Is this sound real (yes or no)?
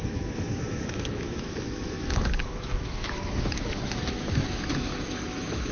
no